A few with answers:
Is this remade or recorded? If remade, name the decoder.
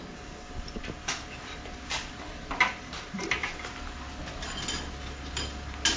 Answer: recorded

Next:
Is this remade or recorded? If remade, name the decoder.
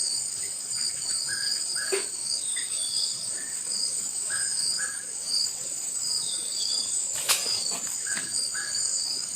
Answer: remade, codec, DAC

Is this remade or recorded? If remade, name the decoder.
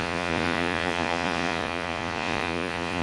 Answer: remade, vocoder, Vocos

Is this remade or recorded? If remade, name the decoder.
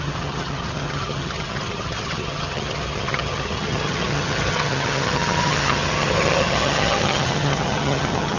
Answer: remade, vocoder, HiFi-GAN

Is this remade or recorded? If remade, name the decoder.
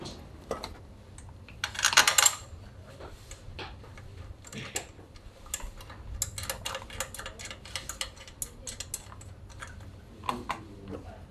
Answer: recorded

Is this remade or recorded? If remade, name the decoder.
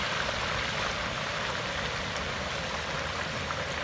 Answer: recorded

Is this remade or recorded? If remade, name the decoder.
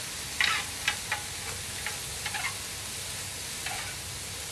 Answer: recorded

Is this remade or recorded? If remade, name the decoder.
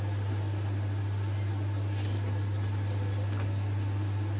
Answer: recorded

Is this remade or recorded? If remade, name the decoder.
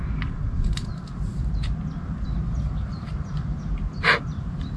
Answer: recorded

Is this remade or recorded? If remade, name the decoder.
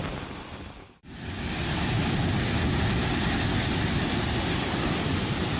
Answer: recorded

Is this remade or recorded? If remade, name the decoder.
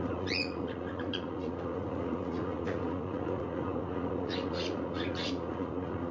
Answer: remade, vocoder, Vocos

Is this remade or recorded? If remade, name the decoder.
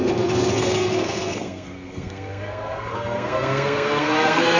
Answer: remade, codec, SNAC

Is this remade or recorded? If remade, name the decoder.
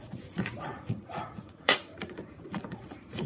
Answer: remade, vocoder, Vocos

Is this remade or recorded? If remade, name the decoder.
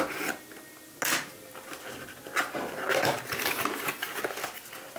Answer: recorded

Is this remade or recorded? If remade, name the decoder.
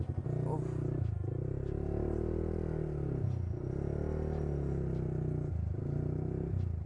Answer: recorded